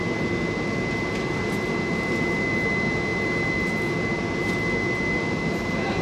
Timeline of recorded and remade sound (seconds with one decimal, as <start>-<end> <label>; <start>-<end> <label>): 0.0-6.0 recorded